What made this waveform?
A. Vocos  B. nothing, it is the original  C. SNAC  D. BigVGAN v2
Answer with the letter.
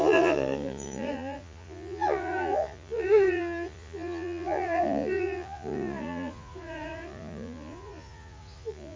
A